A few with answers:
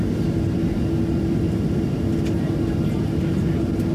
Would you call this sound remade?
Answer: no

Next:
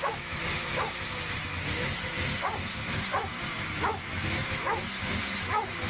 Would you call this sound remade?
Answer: yes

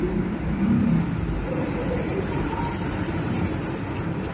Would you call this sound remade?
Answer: yes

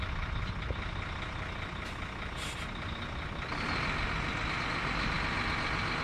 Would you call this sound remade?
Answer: no